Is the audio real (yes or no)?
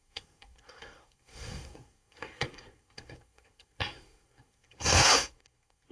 no